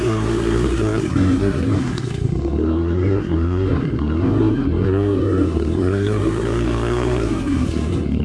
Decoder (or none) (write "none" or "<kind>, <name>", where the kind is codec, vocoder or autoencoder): codec, SNAC